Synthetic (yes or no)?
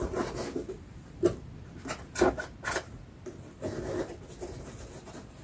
no